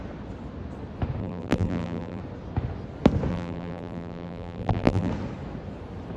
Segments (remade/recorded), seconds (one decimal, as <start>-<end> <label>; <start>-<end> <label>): 0.0-1.2 recorded; 1.2-2.2 remade; 2.2-3.3 recorded; 3.3-5.1 remade; 5.1-6.2 recorded